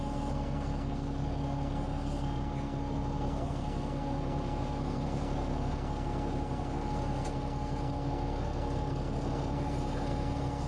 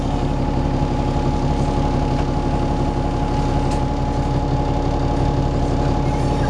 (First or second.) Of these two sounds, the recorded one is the second